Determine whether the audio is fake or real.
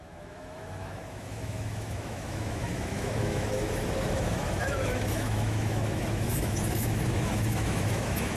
fake